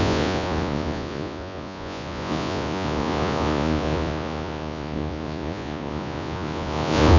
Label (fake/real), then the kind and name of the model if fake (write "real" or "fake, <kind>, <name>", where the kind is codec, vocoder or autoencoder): fake, vocoder, Vocos